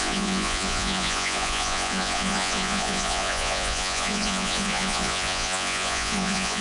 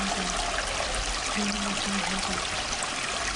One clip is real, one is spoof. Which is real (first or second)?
second